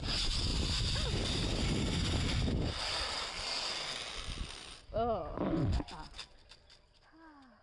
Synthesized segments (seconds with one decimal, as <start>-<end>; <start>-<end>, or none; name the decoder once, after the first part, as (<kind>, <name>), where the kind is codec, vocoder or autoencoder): none